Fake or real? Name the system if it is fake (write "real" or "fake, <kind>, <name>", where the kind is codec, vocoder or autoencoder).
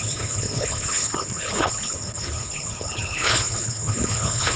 fake, codec, HILCodec